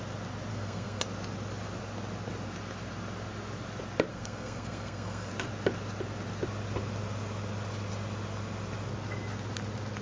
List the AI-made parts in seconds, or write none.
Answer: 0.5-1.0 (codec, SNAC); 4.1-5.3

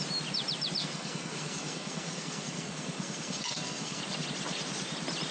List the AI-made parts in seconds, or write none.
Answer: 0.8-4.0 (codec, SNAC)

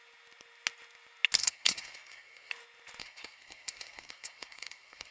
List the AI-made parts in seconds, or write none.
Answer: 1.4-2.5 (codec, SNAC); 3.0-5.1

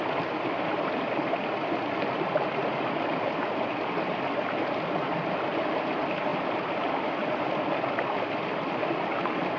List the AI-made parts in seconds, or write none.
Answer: none

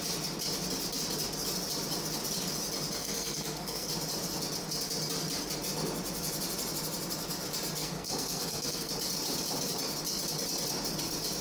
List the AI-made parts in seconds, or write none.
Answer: 3.0-3.9 (codec, SNAC); 7.8-8.9

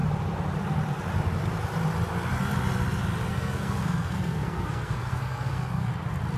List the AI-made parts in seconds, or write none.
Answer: 3.3-5.9 (codec, SNAC)

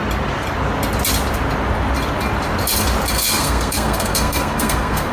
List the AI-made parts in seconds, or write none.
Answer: 3.1-5.1 (codec, SNAC)